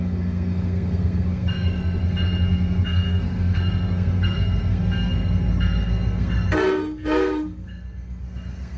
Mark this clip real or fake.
fake